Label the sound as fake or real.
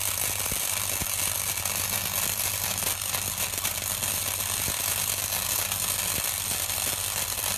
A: real